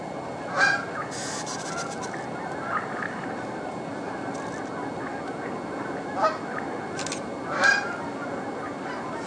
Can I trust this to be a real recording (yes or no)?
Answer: yes